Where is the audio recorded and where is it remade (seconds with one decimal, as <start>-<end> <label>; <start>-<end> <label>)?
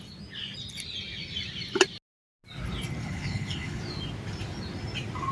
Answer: 0.0-3.0 recorded; 3.0-3.8 remade; 3.8-5.3 recorded